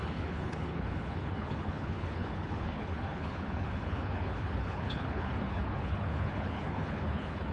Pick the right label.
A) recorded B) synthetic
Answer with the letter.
B